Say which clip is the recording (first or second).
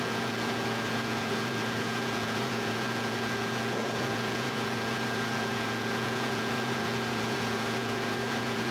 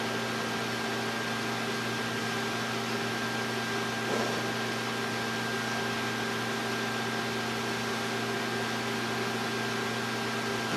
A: second